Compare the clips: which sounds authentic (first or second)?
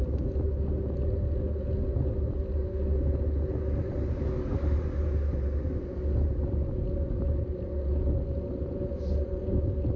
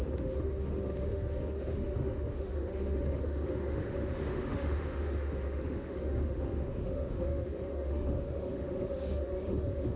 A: first